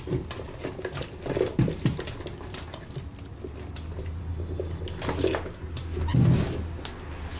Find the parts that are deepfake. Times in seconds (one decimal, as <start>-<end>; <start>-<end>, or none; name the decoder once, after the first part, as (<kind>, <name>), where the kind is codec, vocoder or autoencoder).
none